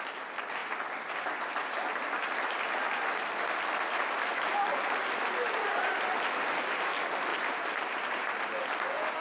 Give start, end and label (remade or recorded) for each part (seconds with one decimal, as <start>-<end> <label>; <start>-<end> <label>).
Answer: 0.0-7.3 recorded; 7.3-8.3 remade; 8.3-9.2 recorded